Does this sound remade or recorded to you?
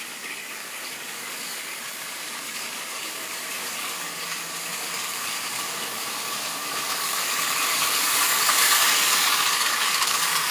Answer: remade